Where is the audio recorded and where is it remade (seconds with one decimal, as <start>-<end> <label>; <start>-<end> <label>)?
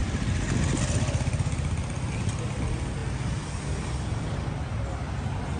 0.0-5.6 recorded